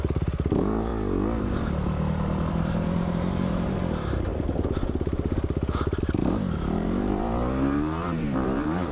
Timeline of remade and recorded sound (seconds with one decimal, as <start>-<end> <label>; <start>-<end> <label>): 0.0-0.9 remade; 0.9-2.5 recorded; 2.5-4.3 remade; 4.3-6.0 recorded; 6.0-8.9 remade